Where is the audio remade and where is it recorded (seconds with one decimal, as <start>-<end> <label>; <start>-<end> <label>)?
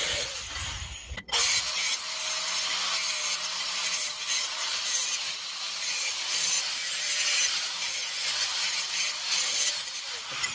0.0-8.0 recorded; 8.0-8.5 remade; 8.5-10.5 recorded